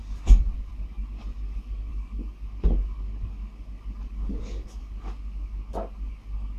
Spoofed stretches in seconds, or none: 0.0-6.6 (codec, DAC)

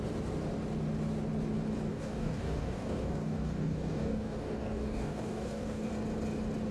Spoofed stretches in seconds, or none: 1.9-5.9 (codec, DAC)

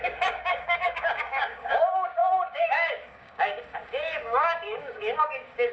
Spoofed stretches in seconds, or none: 0.0-5.7 (codec, DAC)